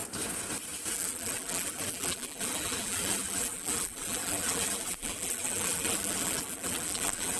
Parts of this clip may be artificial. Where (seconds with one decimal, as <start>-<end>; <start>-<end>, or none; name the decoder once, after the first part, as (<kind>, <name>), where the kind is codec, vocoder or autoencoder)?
0.9-7.4 (vocoder, BigVGAN v2)